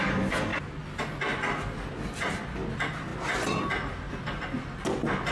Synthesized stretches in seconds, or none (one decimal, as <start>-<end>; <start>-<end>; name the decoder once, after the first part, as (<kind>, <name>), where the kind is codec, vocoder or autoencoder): none